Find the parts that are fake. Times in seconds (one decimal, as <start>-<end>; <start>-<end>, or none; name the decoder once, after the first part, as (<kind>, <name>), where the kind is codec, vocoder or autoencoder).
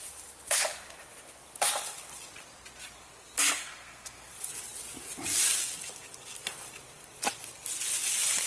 3.6-4.3 (codec, SNAC)